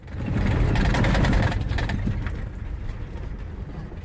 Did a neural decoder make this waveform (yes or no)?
no